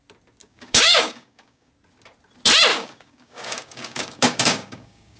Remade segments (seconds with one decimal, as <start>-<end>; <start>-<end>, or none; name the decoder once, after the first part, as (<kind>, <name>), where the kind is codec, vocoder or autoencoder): 0.4-1.7 (codec, DAC); 2.7-5.2